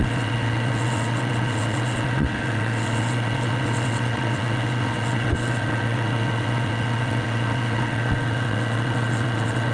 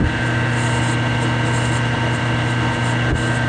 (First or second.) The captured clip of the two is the second